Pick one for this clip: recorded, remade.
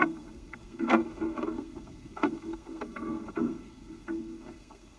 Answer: remade